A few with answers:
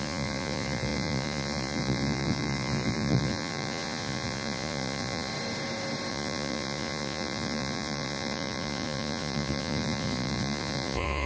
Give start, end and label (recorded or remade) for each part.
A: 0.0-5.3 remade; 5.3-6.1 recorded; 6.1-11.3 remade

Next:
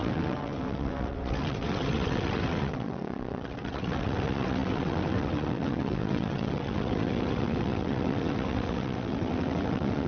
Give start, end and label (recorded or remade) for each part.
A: 0.0-10.1 remade

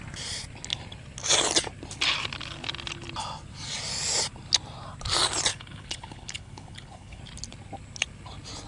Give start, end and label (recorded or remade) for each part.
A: 0.0-5.5 recorded; 5.5-7.2 remade; 7.2-8.7 recorded

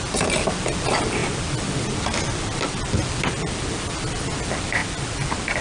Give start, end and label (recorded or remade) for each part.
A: 0.0-5.6 recorded

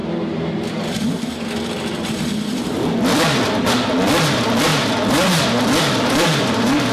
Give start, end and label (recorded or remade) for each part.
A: 0.0-6.9 remade

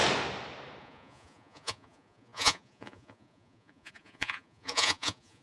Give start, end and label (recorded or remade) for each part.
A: 0.0-0.8 recorded; 0.8-5.4 remade

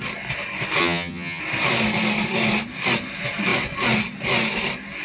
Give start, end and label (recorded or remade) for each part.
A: 0.0-0.8 recorded; 0.8-1.4 remade; 1.4-5.0 recorded